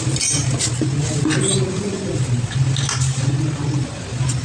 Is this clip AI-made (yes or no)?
no